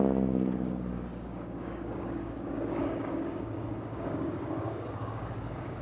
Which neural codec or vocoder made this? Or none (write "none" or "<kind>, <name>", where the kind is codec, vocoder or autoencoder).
codec, DAC